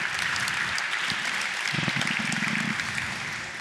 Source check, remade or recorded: recorded